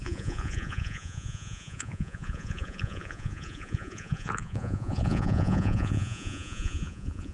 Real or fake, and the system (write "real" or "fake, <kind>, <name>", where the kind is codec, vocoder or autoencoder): fake, vocoder, Vocos